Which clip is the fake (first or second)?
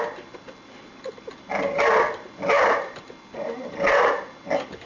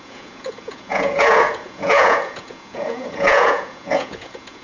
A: second